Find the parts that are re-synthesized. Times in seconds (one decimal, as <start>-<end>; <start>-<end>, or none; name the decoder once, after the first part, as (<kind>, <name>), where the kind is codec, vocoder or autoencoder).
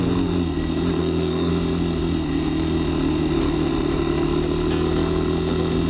1.0-1.5 (codec, SNAC)